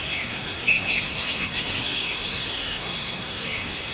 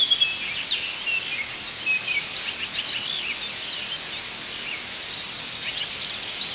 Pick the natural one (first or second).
second